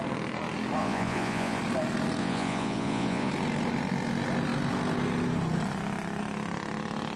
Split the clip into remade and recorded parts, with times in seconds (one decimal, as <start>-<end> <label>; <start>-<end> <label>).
0.0-0.8 recorded; 0.8-1.6 remade; 1.6-2.2 recorded; 2.2-3.3 remade; 3.3-7.2 recorded